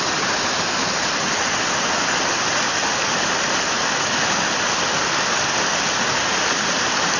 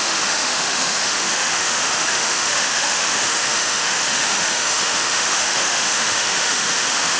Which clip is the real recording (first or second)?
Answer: first